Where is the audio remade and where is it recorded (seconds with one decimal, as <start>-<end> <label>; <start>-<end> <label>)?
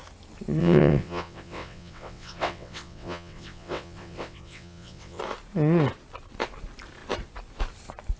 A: 0.0-0.6 recorded; 0.6-5.2 remade; 5.2-8.2 recorded